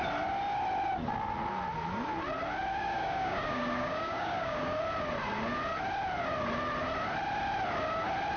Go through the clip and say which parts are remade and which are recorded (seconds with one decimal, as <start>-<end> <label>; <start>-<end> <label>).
0.0-2.7 recorded; 2.7-4.8 remade; 4.8-8.4 recorded